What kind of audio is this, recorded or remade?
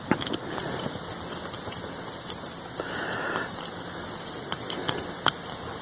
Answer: remade